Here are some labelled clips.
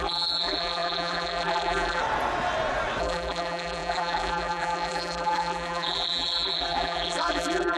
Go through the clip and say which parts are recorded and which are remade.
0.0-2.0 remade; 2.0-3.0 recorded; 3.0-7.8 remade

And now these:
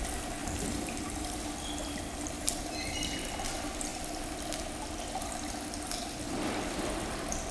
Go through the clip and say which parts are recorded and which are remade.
0.0-0.4 recorded; 0.4-1.4 remade; 1.4-1.8 recorded; 1.8-3.3 remade; 3.3-7.5 recorded